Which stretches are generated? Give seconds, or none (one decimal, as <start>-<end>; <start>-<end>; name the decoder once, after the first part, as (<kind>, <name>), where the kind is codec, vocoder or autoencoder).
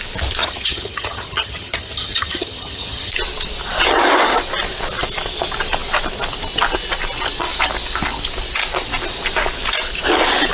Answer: 0.4-3.1 (vocoder, HiFi-GAN)